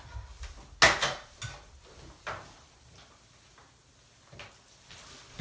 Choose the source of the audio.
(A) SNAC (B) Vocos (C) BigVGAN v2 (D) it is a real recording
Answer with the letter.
D